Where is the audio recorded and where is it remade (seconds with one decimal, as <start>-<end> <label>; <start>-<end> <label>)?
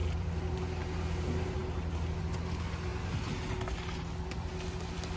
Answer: 0.0-0.6 remade; 0.6-5.2 recorded